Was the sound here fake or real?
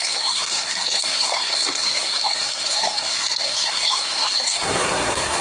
fake